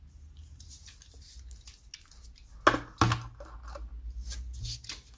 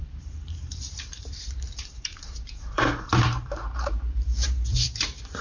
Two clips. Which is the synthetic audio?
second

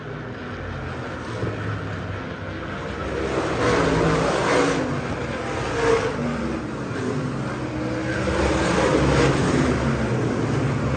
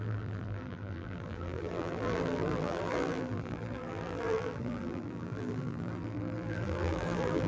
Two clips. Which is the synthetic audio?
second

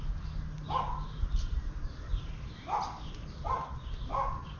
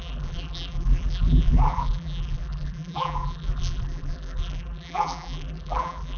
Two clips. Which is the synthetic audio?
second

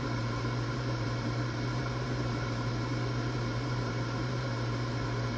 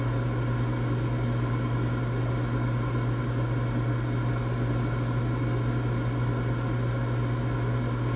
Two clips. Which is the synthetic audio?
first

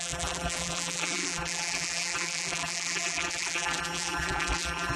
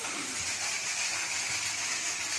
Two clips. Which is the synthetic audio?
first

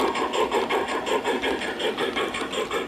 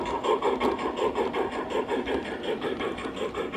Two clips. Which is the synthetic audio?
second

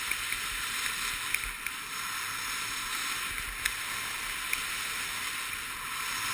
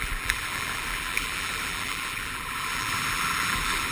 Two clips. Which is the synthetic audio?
second